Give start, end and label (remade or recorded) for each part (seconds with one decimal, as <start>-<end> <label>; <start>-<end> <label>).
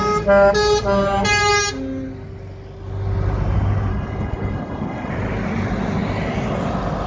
0.0-3.9 recorded; 3.9-5.1 remade; 5.1-7.1 recorded